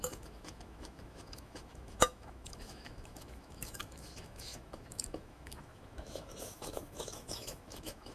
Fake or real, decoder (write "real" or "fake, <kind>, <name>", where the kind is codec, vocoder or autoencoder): fake, autoencoder, DAC-VAE